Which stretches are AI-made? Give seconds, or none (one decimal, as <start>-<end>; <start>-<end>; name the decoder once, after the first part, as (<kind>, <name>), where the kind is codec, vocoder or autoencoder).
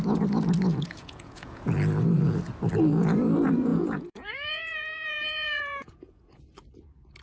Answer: 0.7-1.6 (vocoder, Vocos); 3.7-6.4